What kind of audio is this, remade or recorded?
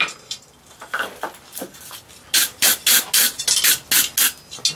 recorded